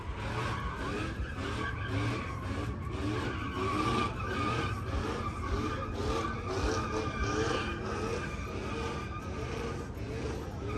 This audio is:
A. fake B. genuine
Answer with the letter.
B